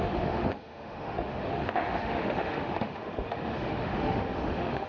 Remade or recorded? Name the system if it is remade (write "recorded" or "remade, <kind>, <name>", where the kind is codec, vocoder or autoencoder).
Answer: remade, autoencoder, DAC-VAE